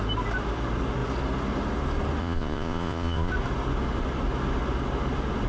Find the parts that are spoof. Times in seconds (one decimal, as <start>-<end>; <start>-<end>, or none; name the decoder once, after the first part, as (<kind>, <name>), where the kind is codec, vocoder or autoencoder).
2.2-3.3 (vocoder, Vocos)